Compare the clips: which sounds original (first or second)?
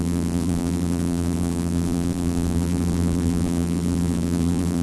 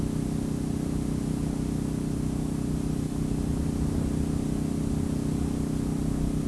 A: second